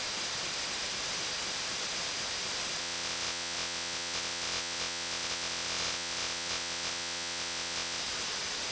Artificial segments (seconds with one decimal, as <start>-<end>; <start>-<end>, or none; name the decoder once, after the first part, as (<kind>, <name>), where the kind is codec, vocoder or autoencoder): 2.8-8.0 (vocoder, WaveNeXt)